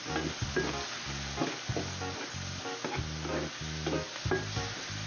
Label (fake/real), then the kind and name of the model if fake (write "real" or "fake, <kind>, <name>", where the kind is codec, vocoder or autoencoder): real